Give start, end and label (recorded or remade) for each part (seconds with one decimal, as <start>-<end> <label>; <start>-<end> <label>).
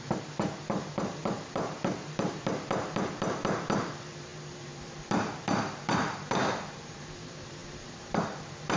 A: 0.0-8.8 remade